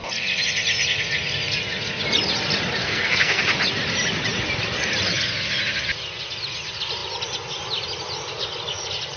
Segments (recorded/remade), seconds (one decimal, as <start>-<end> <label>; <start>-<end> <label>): 0.0-2.8 recorded; 2.8-3.4 remade; 3.4-9.2 recorded